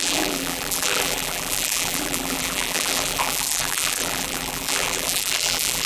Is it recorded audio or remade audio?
remade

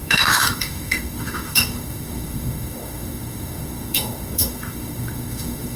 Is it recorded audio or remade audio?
remade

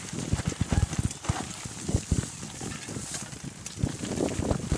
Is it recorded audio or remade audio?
recorded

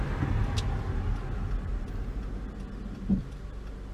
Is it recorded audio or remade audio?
recorded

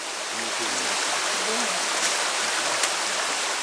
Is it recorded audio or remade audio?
recorded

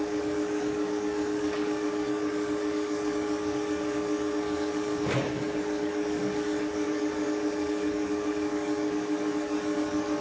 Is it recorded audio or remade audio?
remade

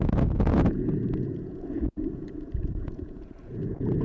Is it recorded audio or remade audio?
remade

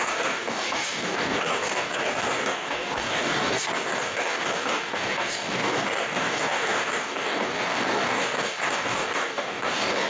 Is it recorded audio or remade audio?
remade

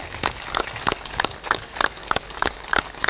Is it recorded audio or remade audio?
remade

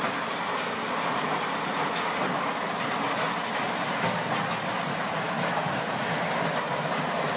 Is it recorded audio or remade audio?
recorded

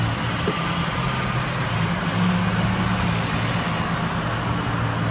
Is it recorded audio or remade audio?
recorded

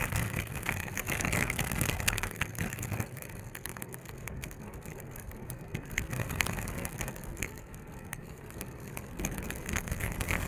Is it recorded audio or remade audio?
remade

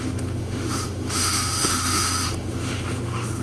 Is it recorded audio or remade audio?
remade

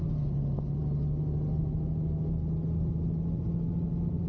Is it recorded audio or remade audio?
recorded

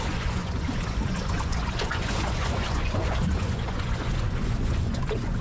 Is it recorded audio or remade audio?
remade